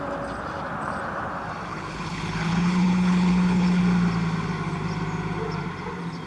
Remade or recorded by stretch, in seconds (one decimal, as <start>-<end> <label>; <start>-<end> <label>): 0.0-1.7 recorded; 1.7-3.8 remade; 3.8-6.3 recorded